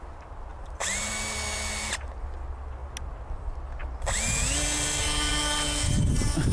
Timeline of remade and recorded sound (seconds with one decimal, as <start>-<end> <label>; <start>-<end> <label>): 0.0-0.5 recorded; 0.5-1.1 remade; 1.1-6.5 recorded